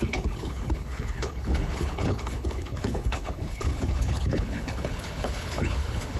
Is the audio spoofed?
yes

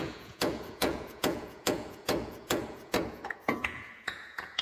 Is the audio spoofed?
yes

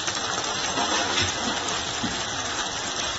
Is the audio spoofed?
no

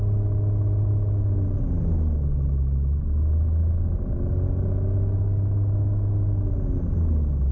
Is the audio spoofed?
no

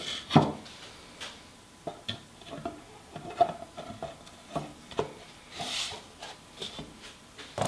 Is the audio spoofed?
no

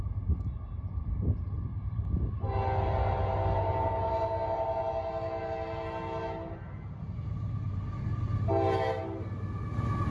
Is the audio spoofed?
no